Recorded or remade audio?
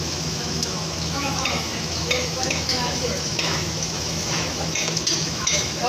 remade